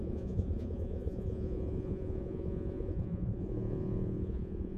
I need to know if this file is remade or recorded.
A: remade